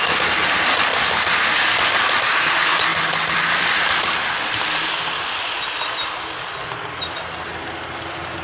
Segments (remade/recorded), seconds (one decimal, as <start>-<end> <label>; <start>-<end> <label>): 0.0-8.4 recorded